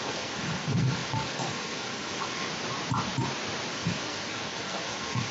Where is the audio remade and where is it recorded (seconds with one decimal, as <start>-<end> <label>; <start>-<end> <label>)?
0.0-2.5 remade; 2.5-3.7 recorded; 3.7-5.3 remade